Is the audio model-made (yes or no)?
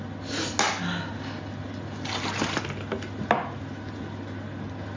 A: no